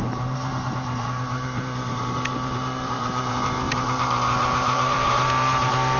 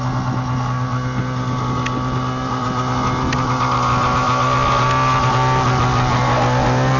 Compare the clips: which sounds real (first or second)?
second